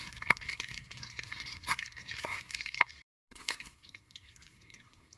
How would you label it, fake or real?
fake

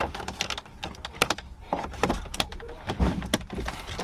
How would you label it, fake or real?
real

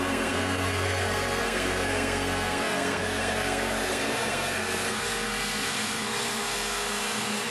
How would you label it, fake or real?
fake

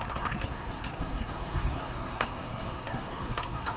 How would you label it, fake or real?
fake